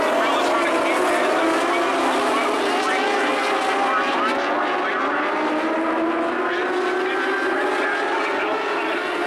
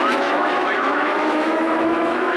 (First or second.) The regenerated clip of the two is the second